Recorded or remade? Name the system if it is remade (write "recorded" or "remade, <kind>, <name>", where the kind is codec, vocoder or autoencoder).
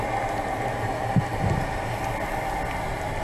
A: recorded